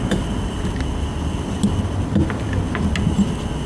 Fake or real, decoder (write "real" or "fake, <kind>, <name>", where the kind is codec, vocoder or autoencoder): real